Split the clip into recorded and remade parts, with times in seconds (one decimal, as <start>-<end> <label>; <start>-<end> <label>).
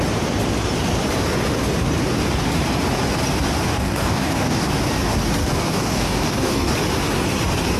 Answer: 0.0-3.7 recorded; 3.7-4.7 remade; 4.7-5.4 recorded; 5.4-6.7 remade; 6.7-7.8 recorded